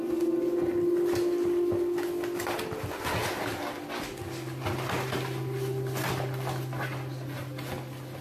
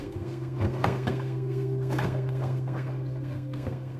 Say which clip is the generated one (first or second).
second